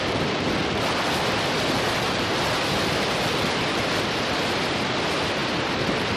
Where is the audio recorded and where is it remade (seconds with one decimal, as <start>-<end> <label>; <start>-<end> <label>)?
0.0-6.2 recorded